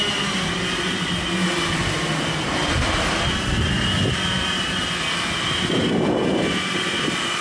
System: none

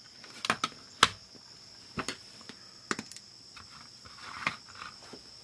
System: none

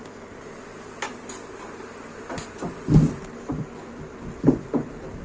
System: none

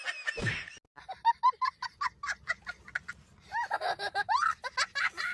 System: none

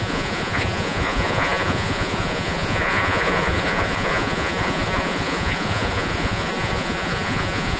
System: vocoder, Vocos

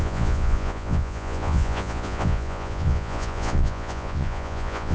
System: vocoder, Vocos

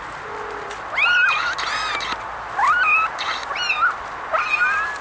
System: none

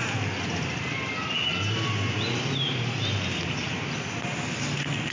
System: none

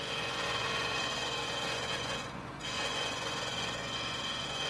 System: vocoder, Vocos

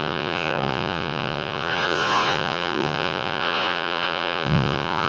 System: vocoder, Vocos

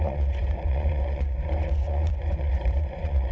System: vocoder, Vocos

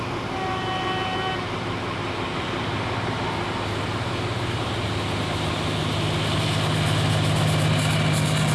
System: none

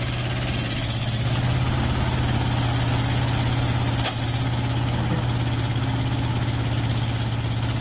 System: none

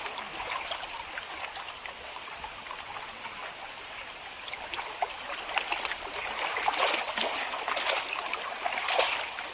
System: none